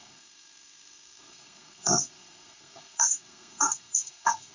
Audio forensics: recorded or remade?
remade